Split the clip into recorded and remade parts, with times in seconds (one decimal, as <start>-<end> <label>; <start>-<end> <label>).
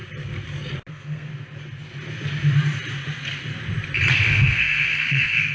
0.0-0.9 recorded; 0.9-1.3 remade; 1.3-4.2 recorded; 4.2-5.5 remade